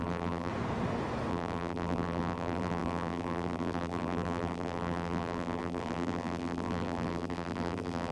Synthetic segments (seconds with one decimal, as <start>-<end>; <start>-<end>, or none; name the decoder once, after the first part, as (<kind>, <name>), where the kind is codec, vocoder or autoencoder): 0.0-0.5 (vocoder, BigVGAN v2); 1.3-8.1